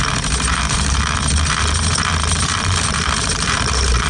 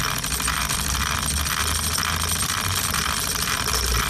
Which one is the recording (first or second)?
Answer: second